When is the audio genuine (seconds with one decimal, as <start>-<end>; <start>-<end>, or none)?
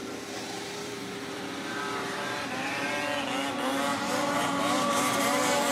2.9-3.9